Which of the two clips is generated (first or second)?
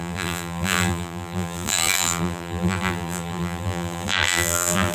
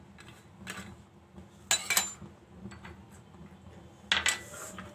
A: first